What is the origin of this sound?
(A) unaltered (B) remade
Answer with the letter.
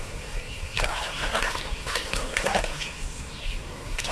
B